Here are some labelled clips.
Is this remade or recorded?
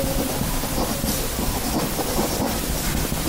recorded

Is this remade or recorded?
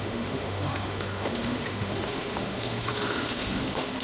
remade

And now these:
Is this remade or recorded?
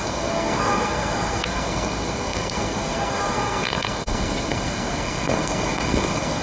remade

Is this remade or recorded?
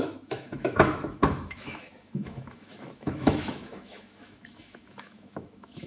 remade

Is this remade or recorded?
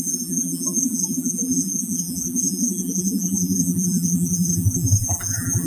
remade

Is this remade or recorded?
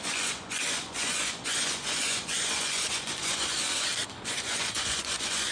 remade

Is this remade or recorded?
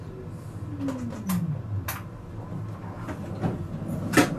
recorded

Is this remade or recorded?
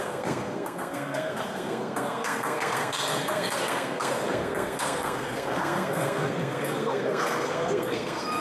remade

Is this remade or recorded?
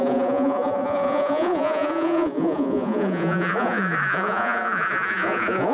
remade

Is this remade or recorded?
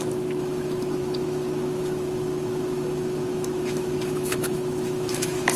remade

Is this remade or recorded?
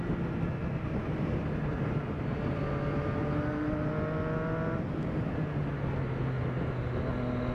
recorded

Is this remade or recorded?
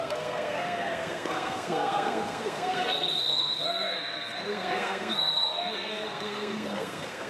remade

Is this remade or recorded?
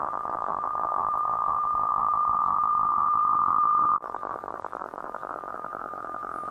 remade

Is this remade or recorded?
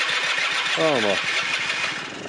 recorded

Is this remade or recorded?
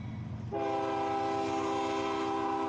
recorded